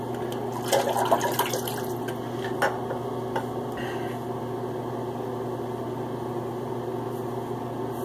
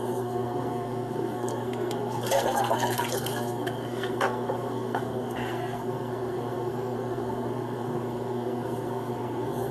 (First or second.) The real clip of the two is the first